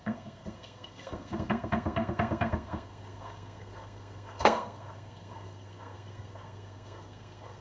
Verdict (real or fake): fake